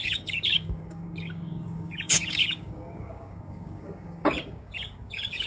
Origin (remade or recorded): remade